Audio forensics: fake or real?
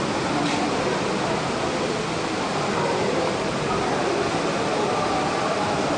real